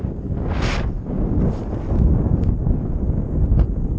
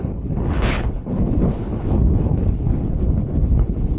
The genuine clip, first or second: first